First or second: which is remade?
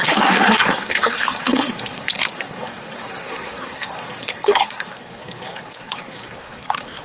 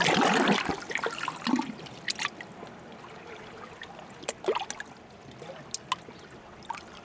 first